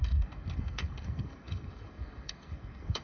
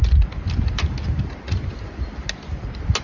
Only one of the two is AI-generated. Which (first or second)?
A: first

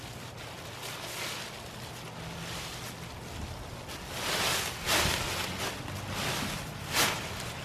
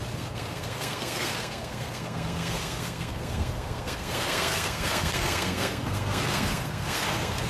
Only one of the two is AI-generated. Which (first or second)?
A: second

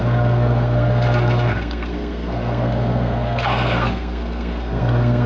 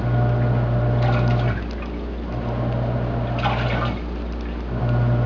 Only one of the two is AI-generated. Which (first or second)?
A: first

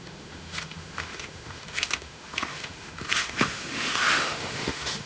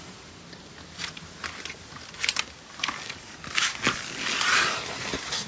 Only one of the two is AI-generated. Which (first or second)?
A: first